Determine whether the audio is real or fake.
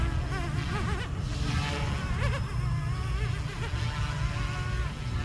real